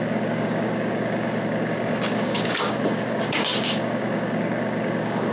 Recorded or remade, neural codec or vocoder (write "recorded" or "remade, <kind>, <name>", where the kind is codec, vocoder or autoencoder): remade, codec, DAC